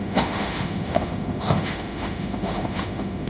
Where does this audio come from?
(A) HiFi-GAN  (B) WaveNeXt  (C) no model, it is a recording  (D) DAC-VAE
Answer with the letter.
D